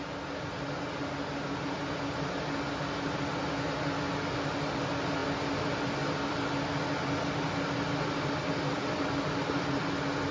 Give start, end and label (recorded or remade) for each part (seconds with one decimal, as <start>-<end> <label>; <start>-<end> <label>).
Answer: 0.0-10.3 recorded